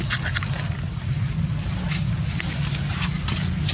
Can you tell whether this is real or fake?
real